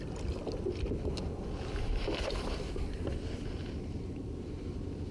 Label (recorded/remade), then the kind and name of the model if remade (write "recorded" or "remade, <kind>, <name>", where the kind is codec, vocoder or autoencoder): recorded